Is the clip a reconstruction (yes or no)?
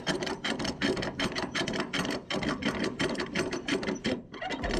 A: yes